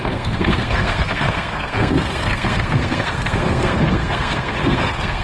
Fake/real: fake